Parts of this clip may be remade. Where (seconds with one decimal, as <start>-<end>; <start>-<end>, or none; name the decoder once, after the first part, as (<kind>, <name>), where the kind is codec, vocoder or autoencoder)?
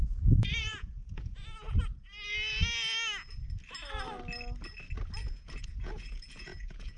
0.0-1.9 (vocoder, Vocos); 5.2-7.0